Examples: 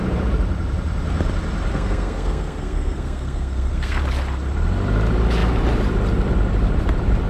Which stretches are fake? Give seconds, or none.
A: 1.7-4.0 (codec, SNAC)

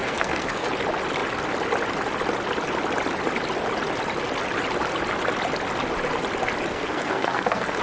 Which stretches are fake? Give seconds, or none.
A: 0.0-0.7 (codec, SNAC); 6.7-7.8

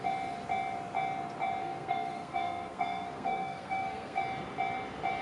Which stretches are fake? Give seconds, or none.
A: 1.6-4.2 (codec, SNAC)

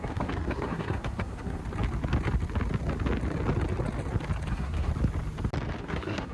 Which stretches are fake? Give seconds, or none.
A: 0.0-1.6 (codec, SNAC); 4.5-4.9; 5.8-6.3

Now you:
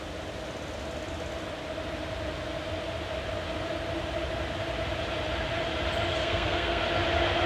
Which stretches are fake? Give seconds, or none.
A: 6.2-6.8 (codec, SNAC)

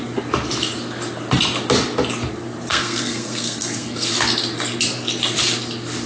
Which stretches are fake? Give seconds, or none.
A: 2.7-4.1 (codec, SNAC)